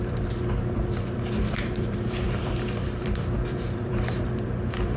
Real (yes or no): no